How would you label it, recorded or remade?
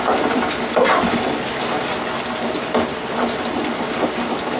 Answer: remade